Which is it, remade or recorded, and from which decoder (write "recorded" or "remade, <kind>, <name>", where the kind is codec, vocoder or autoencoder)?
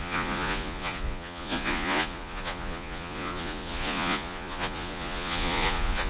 remade, vocoder, Vocos